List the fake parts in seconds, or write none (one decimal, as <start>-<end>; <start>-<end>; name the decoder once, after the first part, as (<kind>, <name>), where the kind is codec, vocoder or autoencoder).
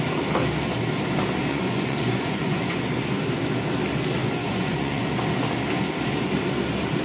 1.5-2.8 (vocoder, Vocos); 4.2-5.1